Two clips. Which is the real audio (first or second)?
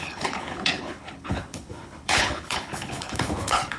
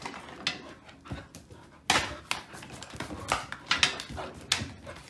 second